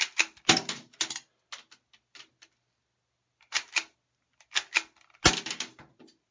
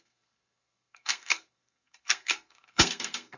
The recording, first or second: first